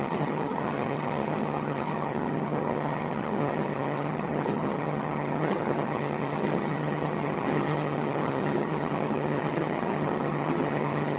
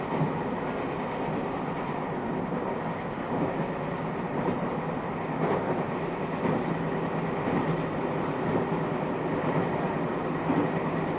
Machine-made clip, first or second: first